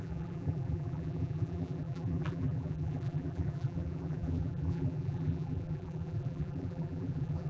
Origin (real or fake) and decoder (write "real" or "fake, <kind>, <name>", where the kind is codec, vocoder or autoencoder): fake, vocoder, BigVGAN v2